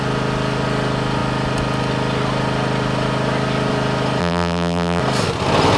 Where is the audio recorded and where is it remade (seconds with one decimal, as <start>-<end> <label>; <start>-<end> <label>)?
0.0-4.2 recorded; 4.2-5.0 remade; 5.0-5.8 recorded